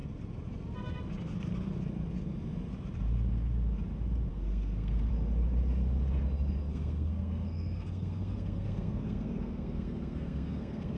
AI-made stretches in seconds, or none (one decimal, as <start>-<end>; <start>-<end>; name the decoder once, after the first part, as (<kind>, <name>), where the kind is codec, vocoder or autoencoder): 4.3-5.1 (codec, SNAC); 6.7-11.0